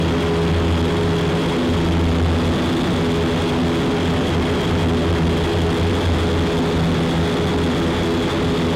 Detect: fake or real real